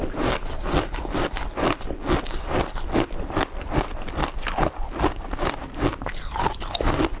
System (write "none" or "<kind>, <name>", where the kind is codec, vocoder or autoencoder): none